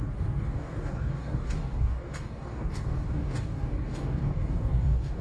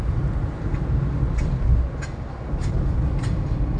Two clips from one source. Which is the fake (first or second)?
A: first